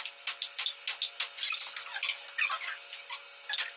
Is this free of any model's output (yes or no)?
yes